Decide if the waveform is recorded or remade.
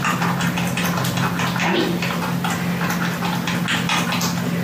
recorded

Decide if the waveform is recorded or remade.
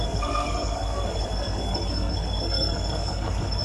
remade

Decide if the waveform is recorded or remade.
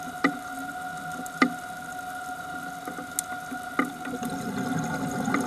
recorded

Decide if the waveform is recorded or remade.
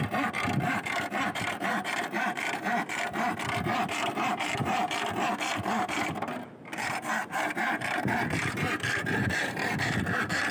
remade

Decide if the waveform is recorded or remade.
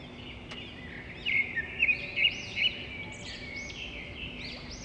recorded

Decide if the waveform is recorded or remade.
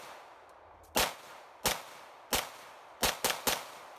recorded